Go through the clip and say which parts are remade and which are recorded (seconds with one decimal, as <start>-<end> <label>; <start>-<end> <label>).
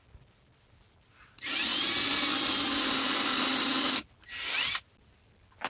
0.0-5.7 recorded